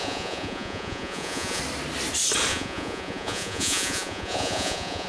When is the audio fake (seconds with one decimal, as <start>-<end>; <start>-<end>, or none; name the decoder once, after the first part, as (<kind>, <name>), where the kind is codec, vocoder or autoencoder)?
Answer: 0.0-1.6 (vocoder, Vocos); 2.5-5.1